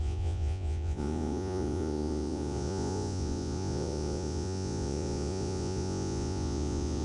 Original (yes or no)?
no